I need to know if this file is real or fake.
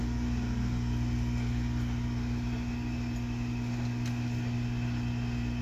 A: real